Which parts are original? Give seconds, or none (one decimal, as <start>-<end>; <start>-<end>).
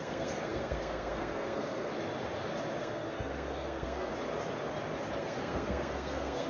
1.9-2.8; 4.1-5.2